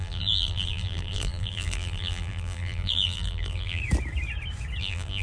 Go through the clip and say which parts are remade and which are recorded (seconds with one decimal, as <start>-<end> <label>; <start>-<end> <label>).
0.0-3.8 remade; 3.8-4.8 recorded; 4.8-5.2 remade